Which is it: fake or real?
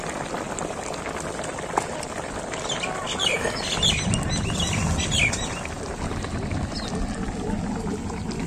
real